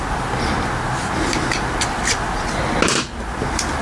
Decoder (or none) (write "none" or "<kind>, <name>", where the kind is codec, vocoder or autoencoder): none